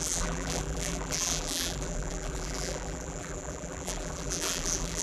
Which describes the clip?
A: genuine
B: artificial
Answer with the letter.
B